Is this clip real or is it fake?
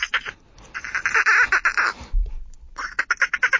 real